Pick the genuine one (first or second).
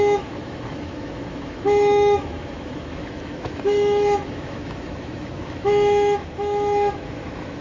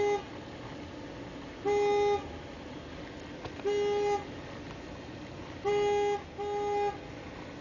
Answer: second